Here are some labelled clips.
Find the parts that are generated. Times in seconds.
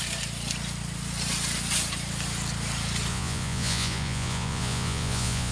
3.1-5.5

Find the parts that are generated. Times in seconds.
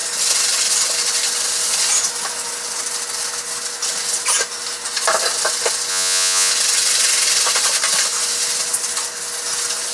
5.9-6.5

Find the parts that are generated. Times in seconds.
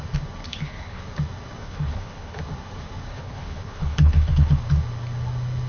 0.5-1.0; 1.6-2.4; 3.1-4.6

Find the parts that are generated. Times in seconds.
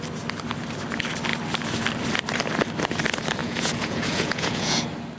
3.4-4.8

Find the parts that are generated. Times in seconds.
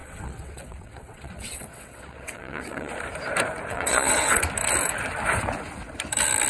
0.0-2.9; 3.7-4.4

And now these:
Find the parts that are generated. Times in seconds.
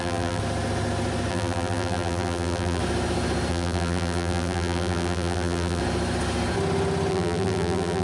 0.0-0.4; 1.3-2.8; 3.5-5.8; 7.1-8.0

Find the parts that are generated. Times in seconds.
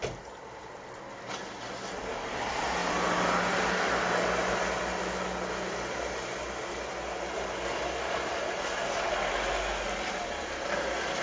none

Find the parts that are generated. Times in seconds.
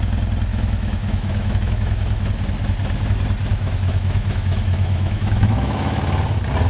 0.5-2.3; 3.5-6.0